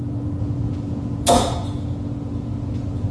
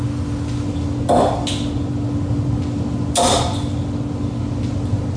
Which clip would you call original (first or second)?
second